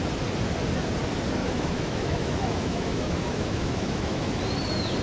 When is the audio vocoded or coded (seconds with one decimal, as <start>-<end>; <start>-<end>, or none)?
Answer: 1.4-4.4